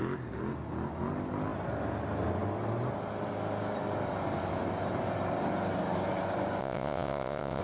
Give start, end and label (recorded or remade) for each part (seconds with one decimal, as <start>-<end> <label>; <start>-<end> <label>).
0.0-6.6 recorded; 6.6-7.6 remade